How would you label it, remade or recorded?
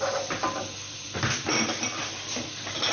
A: remade